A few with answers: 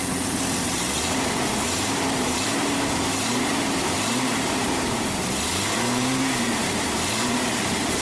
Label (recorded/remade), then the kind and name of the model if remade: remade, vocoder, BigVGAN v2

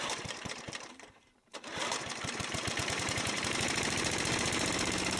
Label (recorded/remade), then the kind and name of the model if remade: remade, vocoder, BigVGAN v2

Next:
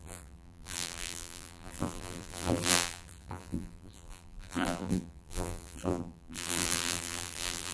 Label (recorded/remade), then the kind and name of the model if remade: remade, vocoder, BigVGAN v2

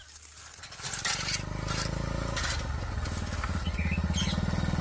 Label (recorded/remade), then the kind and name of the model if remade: recorded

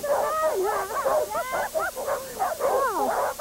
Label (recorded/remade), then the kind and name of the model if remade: recorded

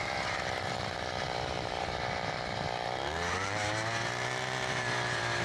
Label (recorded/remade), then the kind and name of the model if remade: remade, vocoder, BigVGAN v2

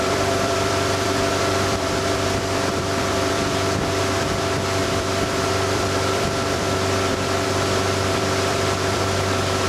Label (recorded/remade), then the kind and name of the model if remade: remade, vocoder, BigVGAN v2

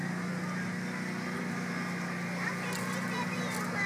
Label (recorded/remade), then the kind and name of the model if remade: recorded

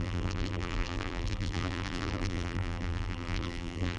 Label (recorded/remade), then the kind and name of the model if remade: remade, vocoder, BigVGAN v2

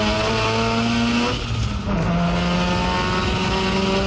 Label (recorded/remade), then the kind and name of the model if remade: recorded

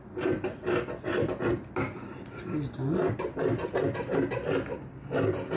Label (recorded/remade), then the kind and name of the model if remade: recorded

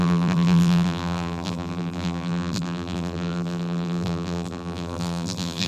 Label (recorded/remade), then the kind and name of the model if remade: remade, vocoder, BigVGAN v2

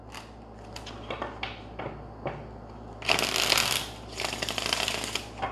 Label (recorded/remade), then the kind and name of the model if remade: recorded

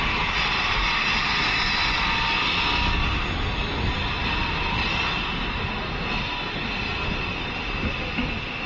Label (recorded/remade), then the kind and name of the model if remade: recorded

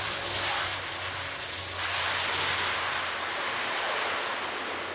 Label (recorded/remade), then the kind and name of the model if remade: recorded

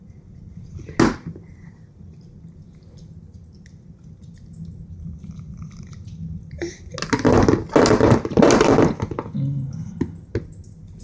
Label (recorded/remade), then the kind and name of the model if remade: recorded